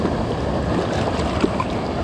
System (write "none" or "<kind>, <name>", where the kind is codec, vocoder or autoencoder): none